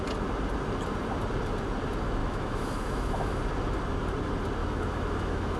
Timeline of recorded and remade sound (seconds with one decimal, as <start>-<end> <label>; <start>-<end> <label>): 0.0-2.2 recorded; 2.2-3.4 remade; 3.4-4.6 recorded; 4.6-5.6 remade